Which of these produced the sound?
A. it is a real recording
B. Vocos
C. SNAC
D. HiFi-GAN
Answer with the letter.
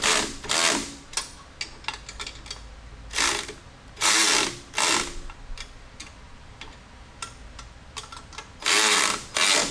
A